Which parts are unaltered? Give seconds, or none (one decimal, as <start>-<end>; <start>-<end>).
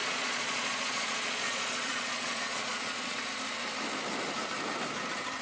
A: 3.2-5.4